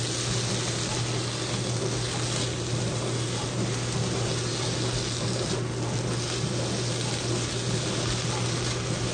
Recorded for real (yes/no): yes